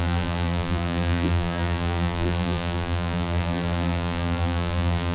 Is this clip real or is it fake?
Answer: fake